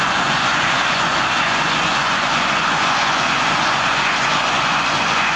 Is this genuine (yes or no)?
no